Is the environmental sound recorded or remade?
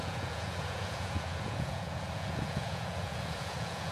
remade